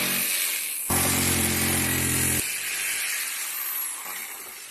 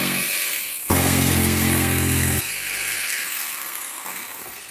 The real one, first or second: first